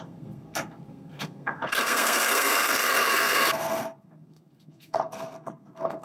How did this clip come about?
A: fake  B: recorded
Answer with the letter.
A